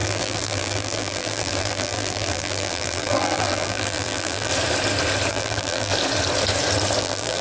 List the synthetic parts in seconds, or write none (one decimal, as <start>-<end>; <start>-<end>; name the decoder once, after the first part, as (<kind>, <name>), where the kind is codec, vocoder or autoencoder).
0.0-4.5 (vocoder, BigVGAN v2); 5.3-5.9; 7.0-7.4